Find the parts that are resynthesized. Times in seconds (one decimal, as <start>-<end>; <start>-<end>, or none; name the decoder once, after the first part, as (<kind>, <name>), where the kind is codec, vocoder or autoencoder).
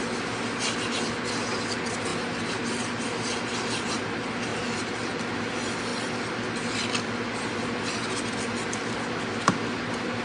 none